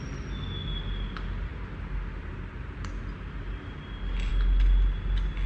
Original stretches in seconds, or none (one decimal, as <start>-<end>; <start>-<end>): 0.0-5.5